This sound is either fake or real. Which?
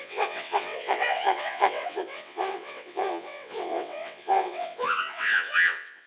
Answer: fake